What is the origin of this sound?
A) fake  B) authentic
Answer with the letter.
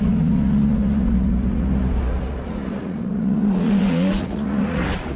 A